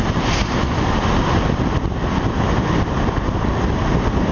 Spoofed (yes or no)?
no